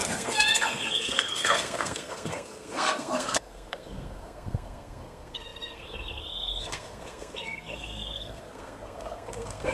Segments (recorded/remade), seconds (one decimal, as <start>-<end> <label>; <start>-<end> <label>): 0.0-9.7 remade